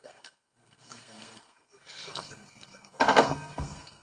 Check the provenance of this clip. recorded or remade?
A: remade